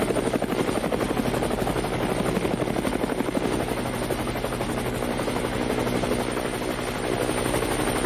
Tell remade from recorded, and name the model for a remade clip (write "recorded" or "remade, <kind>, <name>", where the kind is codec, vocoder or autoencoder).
recorded